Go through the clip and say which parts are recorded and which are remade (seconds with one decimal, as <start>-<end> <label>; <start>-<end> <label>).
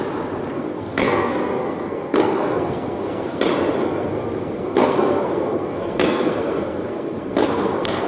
0.0-0.5 recorded; 0.5-3.4 remade; 3.4-3.8 recorded; 3.8-8.1 remade